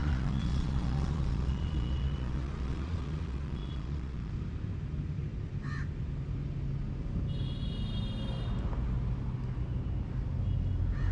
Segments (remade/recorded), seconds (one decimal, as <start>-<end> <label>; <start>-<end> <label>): 0.0-4.3 remade; 4.3-11.1 recorded